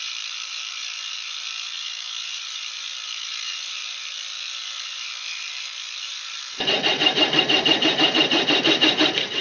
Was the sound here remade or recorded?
remade